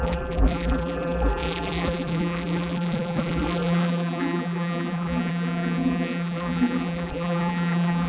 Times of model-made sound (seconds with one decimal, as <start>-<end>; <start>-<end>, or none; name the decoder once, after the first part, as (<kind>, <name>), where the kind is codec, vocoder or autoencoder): 0.0-8.1 (vocoder, BigVGAN v2)